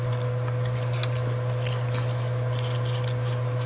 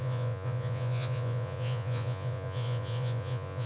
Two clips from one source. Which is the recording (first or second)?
first